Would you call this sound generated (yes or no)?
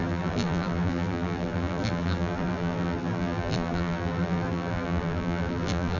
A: yes